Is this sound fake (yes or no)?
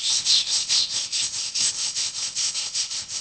yes